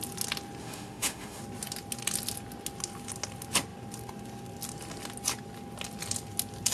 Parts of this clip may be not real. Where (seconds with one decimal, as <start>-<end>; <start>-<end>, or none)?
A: 0.6-1.4